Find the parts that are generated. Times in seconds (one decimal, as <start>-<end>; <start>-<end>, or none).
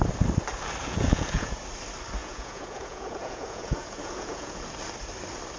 0.8-1.6; 2.2-4.6